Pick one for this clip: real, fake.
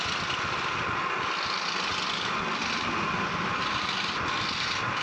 real